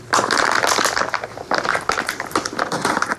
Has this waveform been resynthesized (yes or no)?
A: no